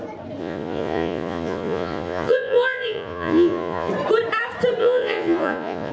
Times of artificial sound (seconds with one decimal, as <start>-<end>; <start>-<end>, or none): 0.4-3.9; 4.8-5.9